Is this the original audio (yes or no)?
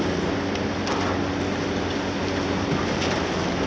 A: yes